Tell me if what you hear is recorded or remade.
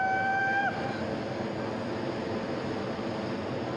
recorded